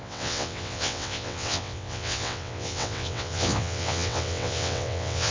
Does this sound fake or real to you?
fake